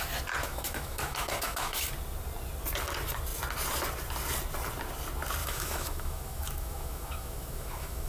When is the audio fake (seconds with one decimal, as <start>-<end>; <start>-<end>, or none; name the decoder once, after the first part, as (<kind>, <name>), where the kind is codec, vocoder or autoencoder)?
0.4-1.9 (autoencoder, DAC-VAE); 5.4-8.1

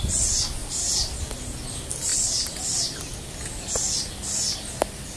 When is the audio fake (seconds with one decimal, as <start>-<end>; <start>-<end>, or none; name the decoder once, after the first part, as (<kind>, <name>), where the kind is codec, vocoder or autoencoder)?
0.6-1.3 (vocoder, BigVGAN v2); 2.1-3.1

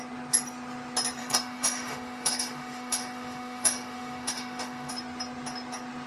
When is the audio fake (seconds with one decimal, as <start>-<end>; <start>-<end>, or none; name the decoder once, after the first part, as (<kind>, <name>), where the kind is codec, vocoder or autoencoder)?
1.2-4.9 (autoencoder, DAC-VAE)

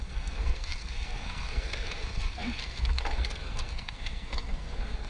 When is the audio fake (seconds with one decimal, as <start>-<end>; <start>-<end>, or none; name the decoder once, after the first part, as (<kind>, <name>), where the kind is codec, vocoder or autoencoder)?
0.0-5.1 (codec, SNAC)

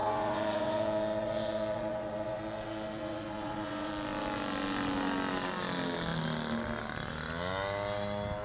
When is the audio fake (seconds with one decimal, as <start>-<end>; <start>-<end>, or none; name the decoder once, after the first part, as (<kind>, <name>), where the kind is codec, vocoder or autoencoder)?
0.0-3.9 (vocoder, Vocos)

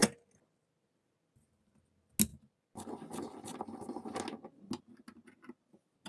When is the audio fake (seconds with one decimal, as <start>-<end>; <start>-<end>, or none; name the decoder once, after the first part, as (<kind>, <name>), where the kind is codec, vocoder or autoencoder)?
none